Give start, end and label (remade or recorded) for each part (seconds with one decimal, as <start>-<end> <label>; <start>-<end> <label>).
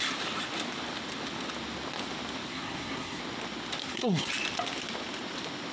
0.0-2.5 recorded; 2.5-3.2 remade; 3.2-3.8 recorded; 3.8-4.3 remade; 4.3-5.7 recorded